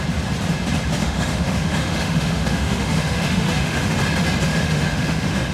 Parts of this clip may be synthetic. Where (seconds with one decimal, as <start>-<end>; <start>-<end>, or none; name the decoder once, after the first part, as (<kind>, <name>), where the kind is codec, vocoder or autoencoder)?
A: 1.0-3.9 (autoencoder, DAC-VAE); 4.5-5.5